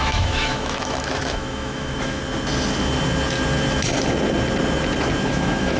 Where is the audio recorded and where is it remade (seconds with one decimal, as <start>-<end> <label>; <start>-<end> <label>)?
0.0-2.2 remade; 2.2-5.2 recorded; 5.2-5.8 remade